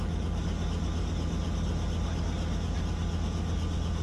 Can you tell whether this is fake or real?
real